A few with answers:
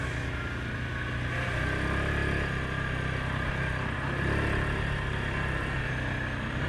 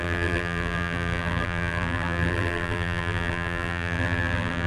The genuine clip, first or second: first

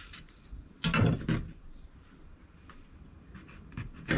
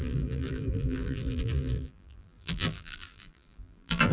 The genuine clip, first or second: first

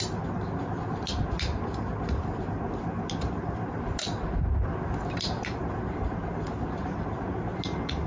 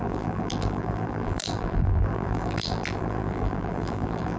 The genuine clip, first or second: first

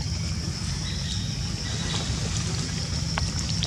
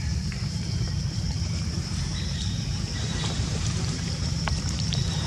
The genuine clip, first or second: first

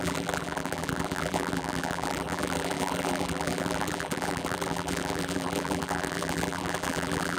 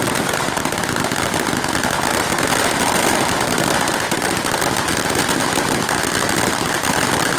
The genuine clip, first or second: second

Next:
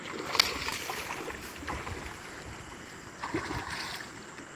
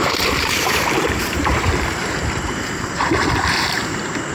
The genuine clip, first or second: first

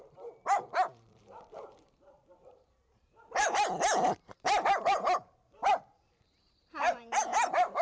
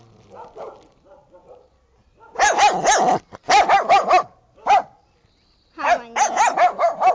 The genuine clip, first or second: second